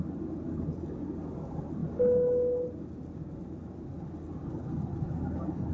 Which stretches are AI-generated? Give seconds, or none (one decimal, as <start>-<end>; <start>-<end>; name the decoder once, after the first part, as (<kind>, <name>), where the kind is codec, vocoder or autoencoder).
none